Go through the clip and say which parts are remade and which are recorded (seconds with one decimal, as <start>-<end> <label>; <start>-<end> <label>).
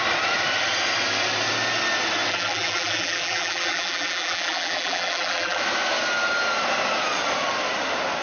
0.0-2.3 recorded; 2.3-5.6 remade; 5.6-8.2 recorded